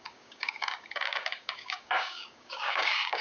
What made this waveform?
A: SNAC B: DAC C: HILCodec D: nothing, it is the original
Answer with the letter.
B